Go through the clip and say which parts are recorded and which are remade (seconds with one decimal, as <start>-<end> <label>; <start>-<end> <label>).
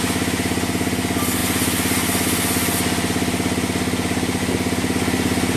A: 0.0-5.6 recorded